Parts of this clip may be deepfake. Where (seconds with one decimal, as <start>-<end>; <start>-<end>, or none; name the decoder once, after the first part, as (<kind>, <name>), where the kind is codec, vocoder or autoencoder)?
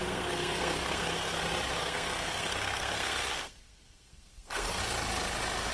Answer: 0.0-1.4 (codec, SNAC); 1.8-4.8